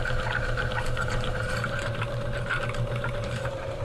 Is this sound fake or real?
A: fake